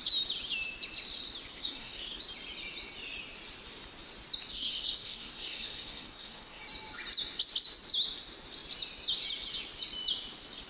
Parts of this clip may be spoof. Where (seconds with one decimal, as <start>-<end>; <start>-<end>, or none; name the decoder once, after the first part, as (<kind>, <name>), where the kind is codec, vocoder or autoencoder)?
1.5-2.2 (codec, SNAC); 4.5-6.6